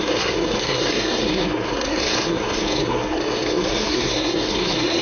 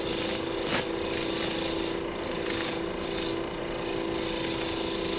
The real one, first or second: second